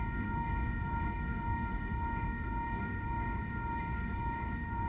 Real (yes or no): no